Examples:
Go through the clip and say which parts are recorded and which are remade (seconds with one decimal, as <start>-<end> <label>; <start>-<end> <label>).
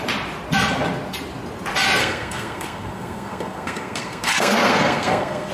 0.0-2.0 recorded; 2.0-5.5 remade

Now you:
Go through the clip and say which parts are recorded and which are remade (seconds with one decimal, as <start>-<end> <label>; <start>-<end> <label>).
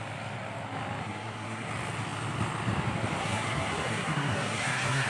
0.0-1.0 recorded; 1.0-1.7 remade; 1.7-3.2 recorded; 3.2-5.1 remade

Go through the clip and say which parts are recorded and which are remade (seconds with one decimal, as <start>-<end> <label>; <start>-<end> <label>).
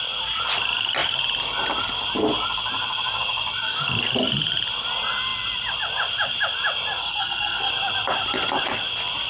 0.0-7.0 recorded; 7.0-7.7 remade; 7.7-9.3 recorded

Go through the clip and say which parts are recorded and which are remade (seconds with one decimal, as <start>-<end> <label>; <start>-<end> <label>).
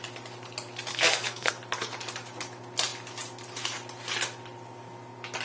0.0-0.9 recorded; 0.9-1.5 remade; 1.5-5.4 recorded